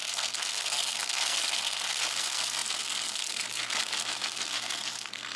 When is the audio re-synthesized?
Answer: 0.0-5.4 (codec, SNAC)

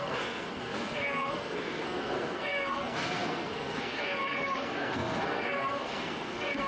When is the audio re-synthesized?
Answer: 0.0-6.7 (codec, SNAC)

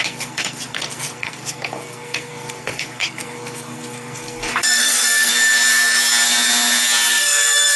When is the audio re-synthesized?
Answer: 0.0-5.3 (codec, SNAC); 7.1-7.8

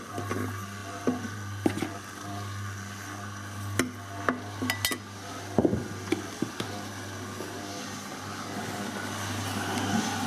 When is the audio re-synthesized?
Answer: none

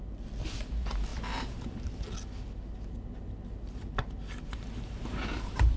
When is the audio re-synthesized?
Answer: none

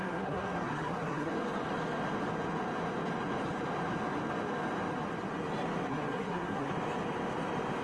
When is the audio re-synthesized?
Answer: 0.0-1.3 (codec, SNAC); 5.9-6.7

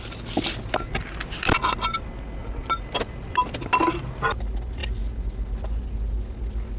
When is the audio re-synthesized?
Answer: none

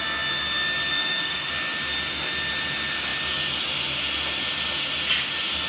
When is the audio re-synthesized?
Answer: 0.9-1.5 (codec, SNAC)